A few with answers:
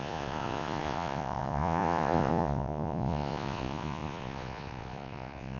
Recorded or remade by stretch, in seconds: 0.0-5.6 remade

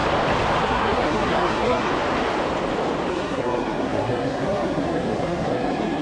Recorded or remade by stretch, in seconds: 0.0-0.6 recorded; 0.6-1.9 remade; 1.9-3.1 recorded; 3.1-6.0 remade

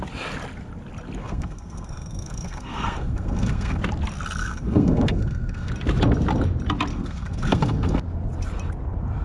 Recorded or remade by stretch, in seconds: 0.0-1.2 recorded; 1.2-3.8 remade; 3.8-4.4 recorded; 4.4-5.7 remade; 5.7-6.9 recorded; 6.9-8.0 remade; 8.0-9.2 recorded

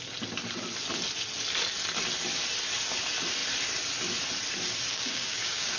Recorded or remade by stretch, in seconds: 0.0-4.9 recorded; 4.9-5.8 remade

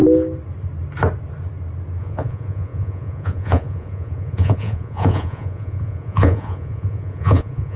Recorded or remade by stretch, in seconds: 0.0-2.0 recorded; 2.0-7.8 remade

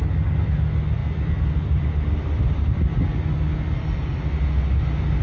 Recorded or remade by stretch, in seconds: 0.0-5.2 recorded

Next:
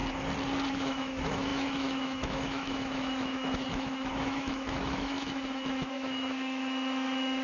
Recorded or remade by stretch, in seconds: 0.0-0.7 recorded; 0.7-7.4 remade